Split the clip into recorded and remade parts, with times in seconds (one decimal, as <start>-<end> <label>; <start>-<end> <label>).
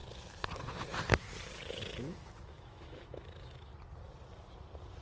0.0-1.8 recorded; 1.8-3.7 remade; 3.7-5.0 recorded